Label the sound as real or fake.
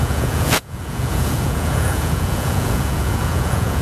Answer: fake